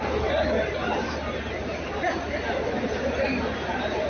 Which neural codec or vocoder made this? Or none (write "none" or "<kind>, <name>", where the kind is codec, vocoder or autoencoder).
none